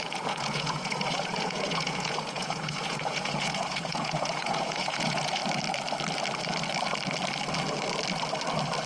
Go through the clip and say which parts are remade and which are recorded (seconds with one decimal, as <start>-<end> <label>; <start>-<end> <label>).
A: 0.0-5.4 remade; 5.4-8.9 recorded